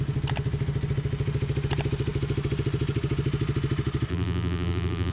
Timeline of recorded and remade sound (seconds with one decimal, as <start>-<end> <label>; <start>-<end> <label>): 0.0-4.1 recorded; 4.1-5.1 remade